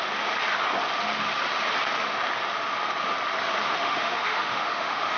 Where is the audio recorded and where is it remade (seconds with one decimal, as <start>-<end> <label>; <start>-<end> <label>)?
0.0-3.7 recorded; 3.7-5.2 remade